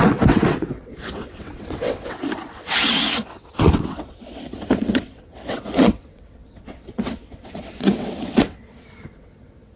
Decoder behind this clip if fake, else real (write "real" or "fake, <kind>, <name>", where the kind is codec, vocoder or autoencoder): fake, vocoder, WaveNeXt